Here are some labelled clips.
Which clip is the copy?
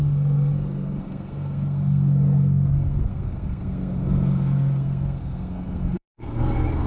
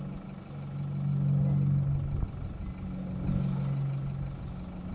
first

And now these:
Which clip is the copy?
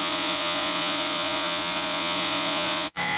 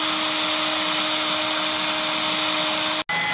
first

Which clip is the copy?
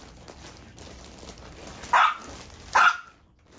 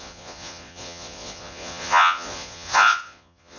second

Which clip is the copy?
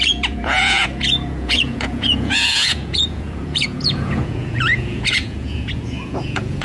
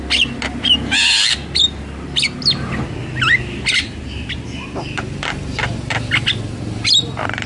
first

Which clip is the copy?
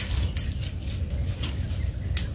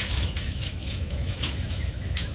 second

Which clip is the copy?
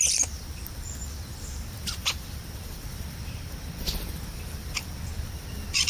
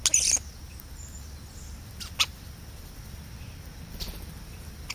first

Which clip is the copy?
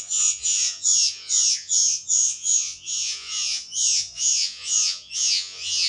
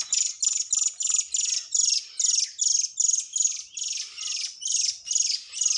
first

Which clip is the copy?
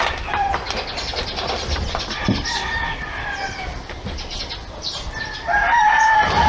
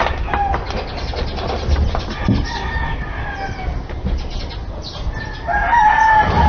first